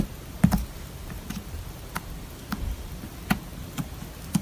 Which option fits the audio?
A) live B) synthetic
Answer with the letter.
A